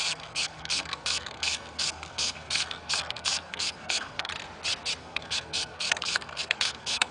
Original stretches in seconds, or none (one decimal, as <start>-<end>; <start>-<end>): 4.3-5.0